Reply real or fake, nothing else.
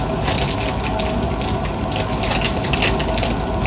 real